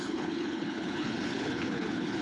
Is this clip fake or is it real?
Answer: fake